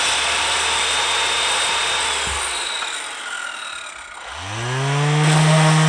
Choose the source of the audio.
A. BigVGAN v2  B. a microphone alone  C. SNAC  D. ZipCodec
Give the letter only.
B